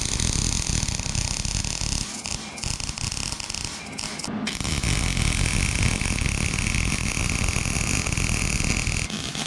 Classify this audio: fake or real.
real